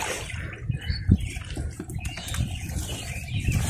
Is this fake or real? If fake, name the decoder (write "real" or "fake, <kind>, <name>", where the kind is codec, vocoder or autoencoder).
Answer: real